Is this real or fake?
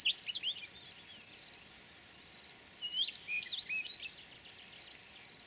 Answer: real